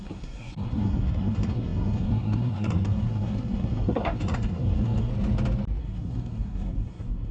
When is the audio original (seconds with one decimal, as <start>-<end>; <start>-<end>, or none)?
5.1-5.8